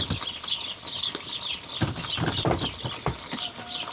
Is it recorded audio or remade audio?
recorded